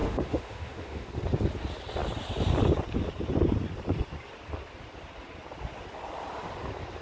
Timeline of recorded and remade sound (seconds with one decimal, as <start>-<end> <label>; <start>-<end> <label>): 0.0-1.1 remade; 1.1-7.0 recorded